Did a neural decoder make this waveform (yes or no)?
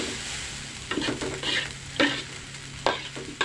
no